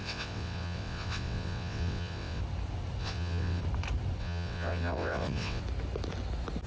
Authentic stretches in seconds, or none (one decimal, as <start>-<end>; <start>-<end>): 2.4-3.0; 3.6-4.2; 5.6-6.7